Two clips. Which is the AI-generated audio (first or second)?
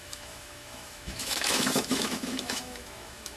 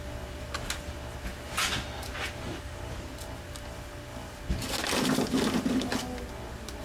first